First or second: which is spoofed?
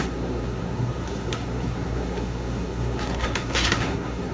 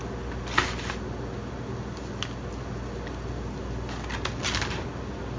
first